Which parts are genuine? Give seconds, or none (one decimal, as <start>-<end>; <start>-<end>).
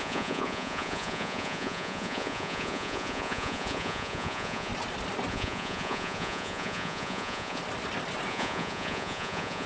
4.7-5.3; 7.6-8.3